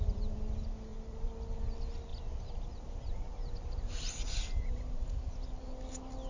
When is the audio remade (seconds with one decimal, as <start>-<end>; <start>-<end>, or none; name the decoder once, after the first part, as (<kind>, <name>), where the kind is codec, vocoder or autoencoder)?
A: 0.9-1.6 (vocoder, BigVGAN v2); 2.1-4.9